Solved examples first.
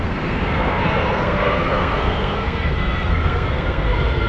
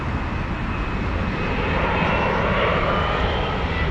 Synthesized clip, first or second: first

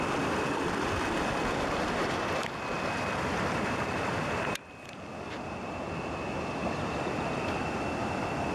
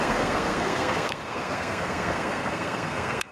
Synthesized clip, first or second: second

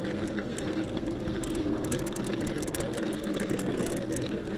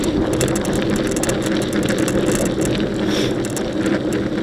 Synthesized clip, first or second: first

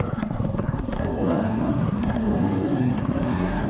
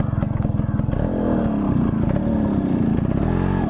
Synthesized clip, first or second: first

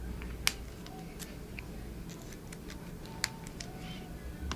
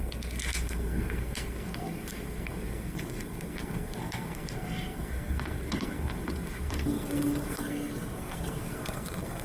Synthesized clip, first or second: second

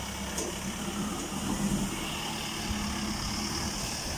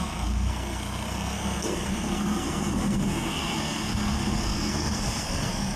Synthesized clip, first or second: second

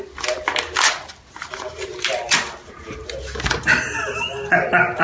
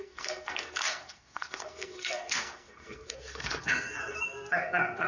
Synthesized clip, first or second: second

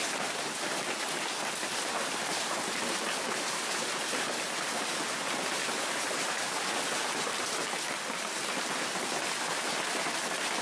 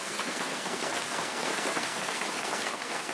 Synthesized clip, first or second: second